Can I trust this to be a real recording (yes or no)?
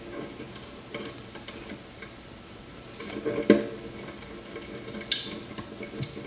yes